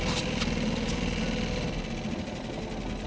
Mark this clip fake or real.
real